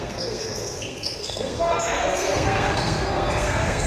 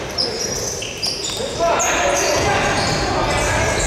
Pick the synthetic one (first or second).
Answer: first